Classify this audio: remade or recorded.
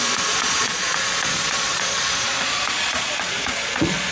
remade